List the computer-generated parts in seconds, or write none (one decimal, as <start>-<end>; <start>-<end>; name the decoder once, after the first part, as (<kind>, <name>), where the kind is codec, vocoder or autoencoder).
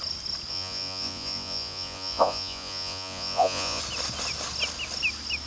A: 0.5-3.8 (vocoder, Vocos)